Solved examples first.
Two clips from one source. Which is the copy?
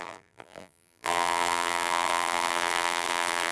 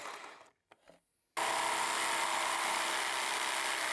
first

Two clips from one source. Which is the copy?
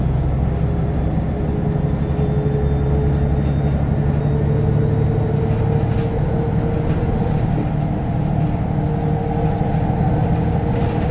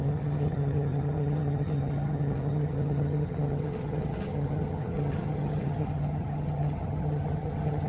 second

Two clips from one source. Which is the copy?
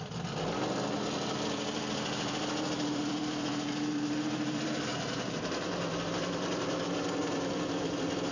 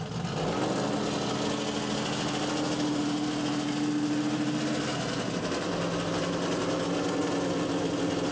first